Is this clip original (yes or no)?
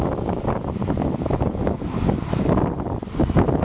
yes